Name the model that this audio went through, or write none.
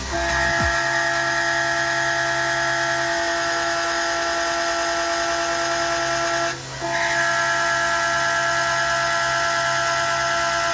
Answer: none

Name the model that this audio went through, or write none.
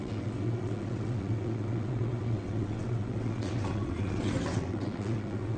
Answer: vocoder, WaveNeXt